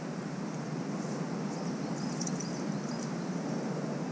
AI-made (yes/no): no